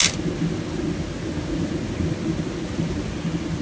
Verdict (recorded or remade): recorded